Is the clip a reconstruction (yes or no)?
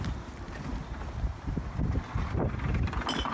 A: no